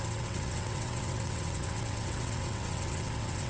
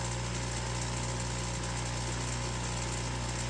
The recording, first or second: second